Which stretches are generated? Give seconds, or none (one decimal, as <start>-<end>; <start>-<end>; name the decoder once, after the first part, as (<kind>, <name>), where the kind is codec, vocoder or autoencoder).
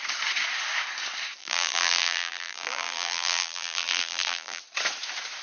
1.4-4.6 (vocoder, BigVGAN v2)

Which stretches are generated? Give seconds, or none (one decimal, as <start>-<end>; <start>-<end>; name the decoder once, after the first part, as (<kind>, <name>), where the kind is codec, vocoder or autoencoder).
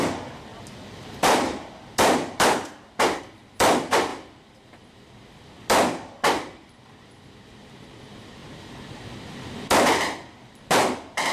0.0-11.3 (vocoder, BigVGAN v2)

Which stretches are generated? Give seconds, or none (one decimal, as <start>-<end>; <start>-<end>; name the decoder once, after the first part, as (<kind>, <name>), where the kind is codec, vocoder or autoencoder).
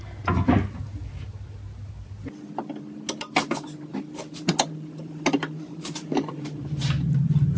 3.9-7.6 (vocoder, BigVGAN v2)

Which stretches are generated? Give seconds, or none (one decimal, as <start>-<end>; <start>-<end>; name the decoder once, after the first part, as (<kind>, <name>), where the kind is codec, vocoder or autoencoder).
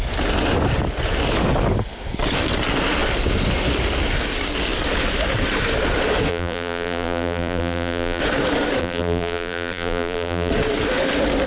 6.3-8.2 (vocoder, BigVGAN v2); 8.8-10.5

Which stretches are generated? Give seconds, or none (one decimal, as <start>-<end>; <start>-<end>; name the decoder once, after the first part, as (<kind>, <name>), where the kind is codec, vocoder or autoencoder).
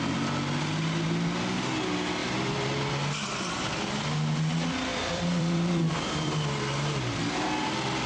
2.2-3.6 (vocoder, BigVGAN v2); 4.9-6.6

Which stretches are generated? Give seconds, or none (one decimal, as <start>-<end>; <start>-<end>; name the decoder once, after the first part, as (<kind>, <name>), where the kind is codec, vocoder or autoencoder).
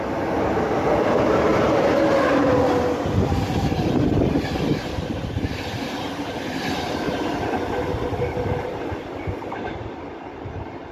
1.5-2.5 (vocoder, BigVGAN v2); 4.7-7.5